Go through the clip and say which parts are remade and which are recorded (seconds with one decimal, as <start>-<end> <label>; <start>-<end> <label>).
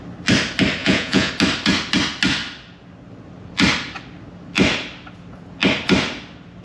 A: 0.0-0.8 recorded; 0.8-1.3 remade; 1.3-6.6 recorded